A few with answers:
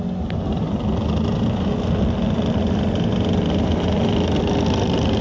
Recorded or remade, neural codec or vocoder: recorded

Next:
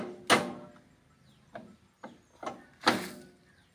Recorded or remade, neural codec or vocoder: recorded